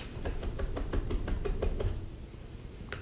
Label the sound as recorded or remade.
recorded